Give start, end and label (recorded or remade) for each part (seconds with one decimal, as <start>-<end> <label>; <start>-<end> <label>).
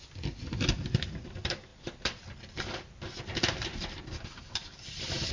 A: 0.0-5.3 recorded